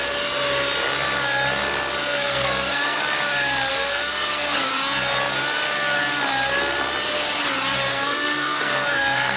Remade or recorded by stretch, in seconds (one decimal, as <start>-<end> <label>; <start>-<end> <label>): 0.0-2.0 recorded; 2.0-3.0 remade; 3.0-3.7 recorded; 3.7-4.7 remade; 4.7-7.9 recorded; 7.9-9.4 remade